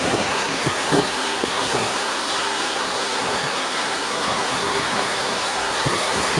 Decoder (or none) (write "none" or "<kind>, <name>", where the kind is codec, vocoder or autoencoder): codec, SNAC